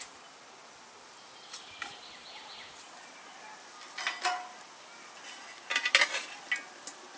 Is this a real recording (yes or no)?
yes